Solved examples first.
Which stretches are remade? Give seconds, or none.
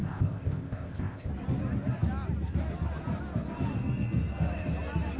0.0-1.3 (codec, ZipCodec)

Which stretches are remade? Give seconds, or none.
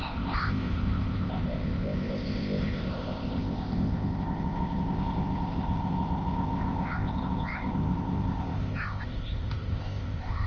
0.0-10.5 (codec, ZipCodec)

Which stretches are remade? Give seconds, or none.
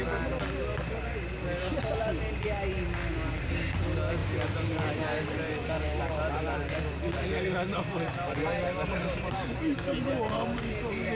none